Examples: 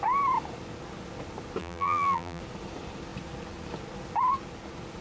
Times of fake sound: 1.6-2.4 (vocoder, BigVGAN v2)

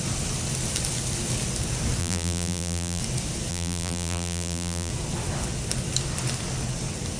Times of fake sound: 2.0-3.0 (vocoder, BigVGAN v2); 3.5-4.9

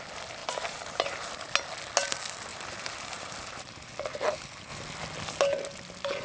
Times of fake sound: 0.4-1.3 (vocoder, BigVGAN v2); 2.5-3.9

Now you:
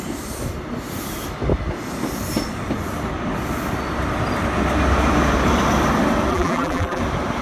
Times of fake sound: 6.3-7.0 (vocoder, BigVGAN v2)

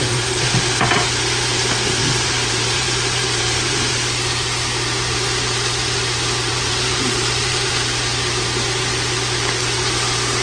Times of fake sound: 2.0-3.9 (vocoder, BigVGAN v2); 6.5-7.7

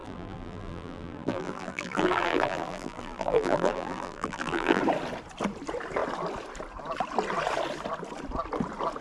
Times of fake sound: 0.0-4.8 (vocoder, BigVGAN v2)

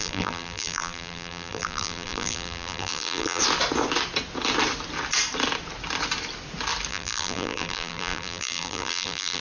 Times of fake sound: 0.0-3.4 (vocoder, BigVGAN v2); 6.9-9.4